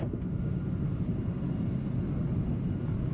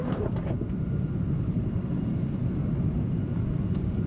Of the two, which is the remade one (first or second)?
second